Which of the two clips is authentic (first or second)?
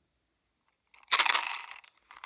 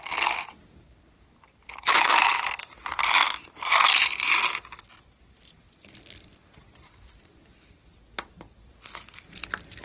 first